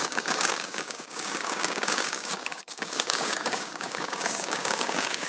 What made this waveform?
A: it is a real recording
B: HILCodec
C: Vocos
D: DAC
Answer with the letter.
D